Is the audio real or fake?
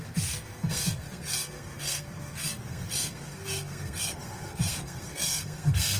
fake